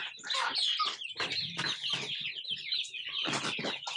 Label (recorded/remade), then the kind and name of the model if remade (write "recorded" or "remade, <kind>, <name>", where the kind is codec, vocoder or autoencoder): recorded